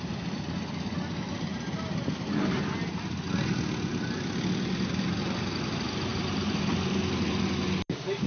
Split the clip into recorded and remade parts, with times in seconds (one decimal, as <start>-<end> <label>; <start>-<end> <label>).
0.0-8.3 recorded